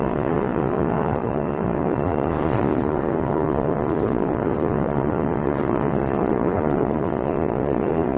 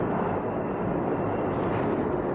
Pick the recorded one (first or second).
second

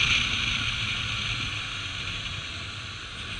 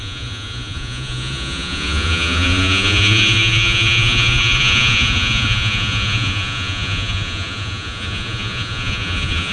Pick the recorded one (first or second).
first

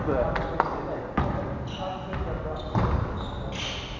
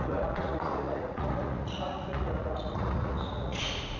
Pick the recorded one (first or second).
first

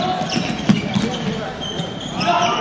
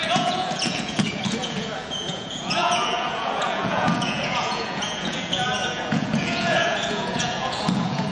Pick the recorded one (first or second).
first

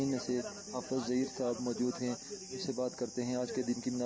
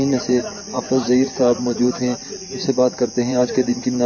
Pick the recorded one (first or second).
first